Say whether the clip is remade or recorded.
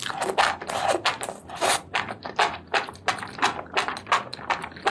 recorded